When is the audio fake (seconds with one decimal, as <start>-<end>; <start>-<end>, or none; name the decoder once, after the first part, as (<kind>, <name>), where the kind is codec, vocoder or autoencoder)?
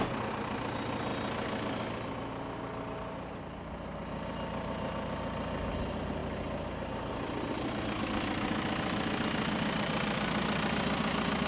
none